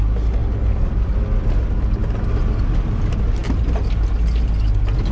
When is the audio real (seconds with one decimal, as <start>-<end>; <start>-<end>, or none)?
0.0-0.4; 1.2-3.4; 4.2-5.1

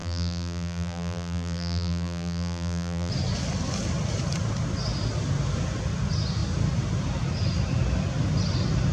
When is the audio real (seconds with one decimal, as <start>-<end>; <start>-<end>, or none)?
3.1-8.9

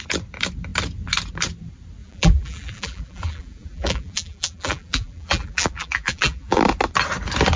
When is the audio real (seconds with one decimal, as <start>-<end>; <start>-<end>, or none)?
0.0-2.0; 6.6-7.6

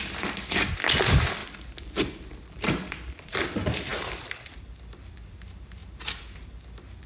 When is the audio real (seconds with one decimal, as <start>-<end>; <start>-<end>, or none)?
1.4-2.4; 5.8-7.1

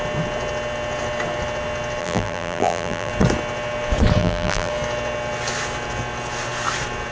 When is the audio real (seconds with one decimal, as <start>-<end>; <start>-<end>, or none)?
0.0-2.0; 3.1-4.2; 4.7-7.1

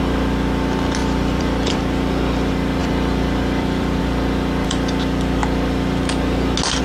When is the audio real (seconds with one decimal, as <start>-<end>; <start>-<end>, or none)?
0.0-1.0; 1.8-2.8; 4.0-6.8

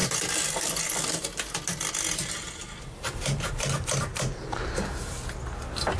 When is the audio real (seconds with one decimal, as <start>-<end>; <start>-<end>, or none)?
0.7-4.1; 5.2-6.0

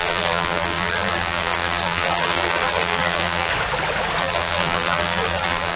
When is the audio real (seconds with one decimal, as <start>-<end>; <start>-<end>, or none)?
3.5-4.2